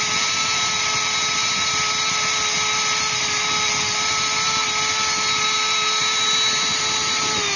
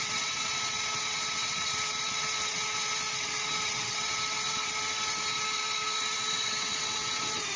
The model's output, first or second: second